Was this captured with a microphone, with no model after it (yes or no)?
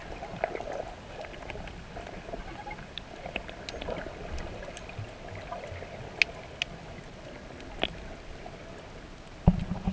yes